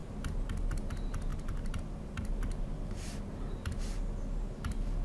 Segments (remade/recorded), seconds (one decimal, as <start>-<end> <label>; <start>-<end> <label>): 0.0-1.3 recorded; 1.3-2.3 remade; 2.3-5.0 recorded